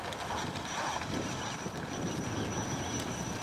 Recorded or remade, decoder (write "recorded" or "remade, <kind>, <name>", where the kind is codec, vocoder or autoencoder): recorded